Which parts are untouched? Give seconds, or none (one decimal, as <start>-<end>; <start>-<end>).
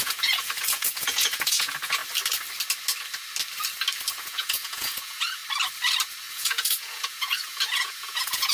2.0-4.1; 5.4-6.3